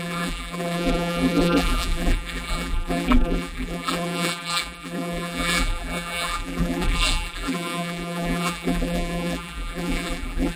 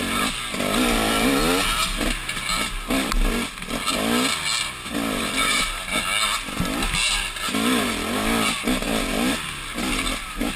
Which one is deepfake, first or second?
first